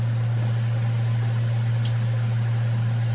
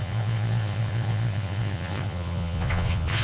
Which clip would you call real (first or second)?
first